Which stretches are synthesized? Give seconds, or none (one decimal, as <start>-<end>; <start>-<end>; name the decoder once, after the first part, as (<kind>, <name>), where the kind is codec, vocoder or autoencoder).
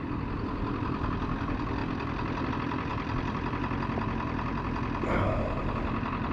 2.9-3.6 (vocoder, BigVGAN v2)